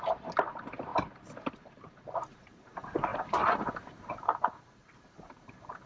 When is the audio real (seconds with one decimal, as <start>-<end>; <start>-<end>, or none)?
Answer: 0.9-1.5